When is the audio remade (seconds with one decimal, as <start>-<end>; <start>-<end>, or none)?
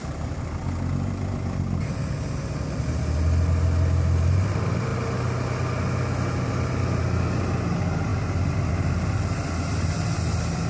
none